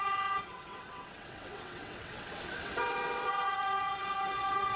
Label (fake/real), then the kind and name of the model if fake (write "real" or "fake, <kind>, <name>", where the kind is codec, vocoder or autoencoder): fake, vocoder, WaveNeXt